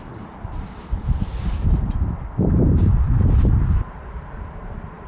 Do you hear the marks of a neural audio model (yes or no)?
yes